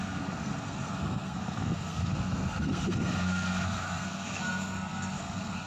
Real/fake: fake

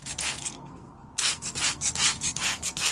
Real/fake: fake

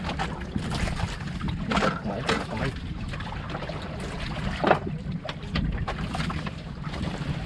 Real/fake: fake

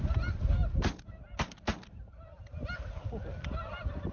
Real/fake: real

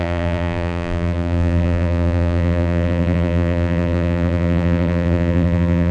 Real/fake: fake